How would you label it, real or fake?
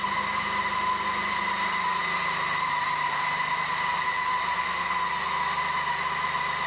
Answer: real